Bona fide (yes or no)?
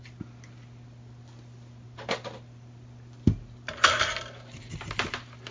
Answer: yes